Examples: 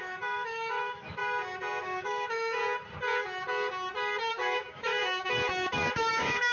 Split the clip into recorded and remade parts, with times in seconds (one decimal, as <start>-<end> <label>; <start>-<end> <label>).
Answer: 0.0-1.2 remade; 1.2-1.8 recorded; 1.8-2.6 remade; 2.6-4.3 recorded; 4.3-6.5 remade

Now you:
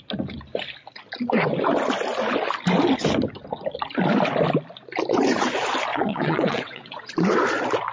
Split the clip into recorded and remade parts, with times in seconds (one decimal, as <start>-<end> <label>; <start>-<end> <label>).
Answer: 0.0-5.9 recorded; 5.9-7.1 remade; 7.1-7.9 recorded

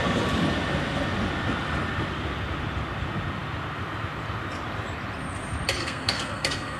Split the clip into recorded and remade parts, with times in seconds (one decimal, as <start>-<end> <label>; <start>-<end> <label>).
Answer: 0.0-5.8 recorded; 5.8-6.8 remade

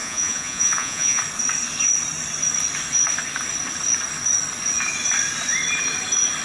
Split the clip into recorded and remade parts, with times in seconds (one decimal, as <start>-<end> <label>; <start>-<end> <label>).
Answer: 0.0-1.2 remade; 1.2-6.4 recorded